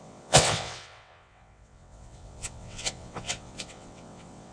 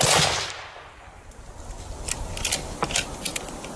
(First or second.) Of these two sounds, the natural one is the second